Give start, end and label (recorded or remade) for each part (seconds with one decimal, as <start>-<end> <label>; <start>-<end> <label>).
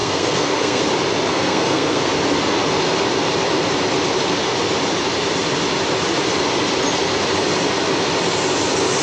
0.0-0.8 remade; 0.8-1.3 recorded; 1.3-2.1 remade; 2.1-9.0 recorded